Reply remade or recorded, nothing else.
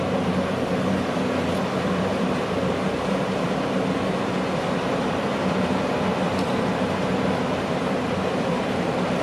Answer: remade